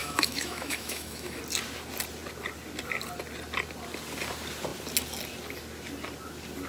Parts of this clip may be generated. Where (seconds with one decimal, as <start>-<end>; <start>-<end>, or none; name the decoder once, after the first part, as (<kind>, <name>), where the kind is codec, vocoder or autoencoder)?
0.0-1.4 (autoencoder, DAC-VAE)